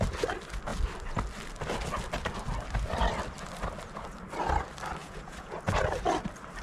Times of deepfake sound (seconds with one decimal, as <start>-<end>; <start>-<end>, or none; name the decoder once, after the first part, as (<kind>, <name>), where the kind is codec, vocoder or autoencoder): 5.0-5.6 (vocoder, Vocos)